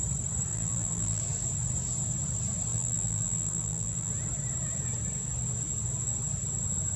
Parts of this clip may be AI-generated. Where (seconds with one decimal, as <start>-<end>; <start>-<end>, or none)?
0.5-1.2; 2.7-4.1